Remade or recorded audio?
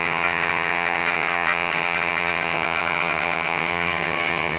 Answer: remade